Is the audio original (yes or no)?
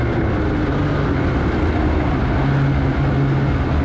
yes